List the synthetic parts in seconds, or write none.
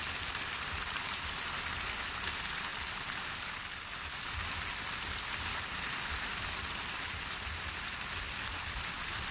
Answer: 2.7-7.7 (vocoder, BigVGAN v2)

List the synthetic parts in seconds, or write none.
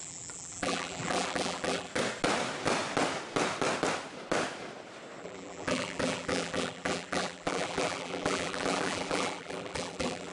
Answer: 0.0-1.9 (vocoder, BigVGAN v2); 5.2-10.3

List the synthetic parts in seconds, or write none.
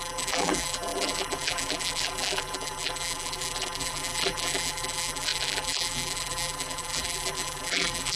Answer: 0.0-8.2 (vocoder, BigVGAN v2)